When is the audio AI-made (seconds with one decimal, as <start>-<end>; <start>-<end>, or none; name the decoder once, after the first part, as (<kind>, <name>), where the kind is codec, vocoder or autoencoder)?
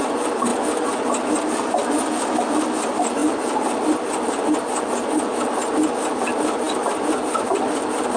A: none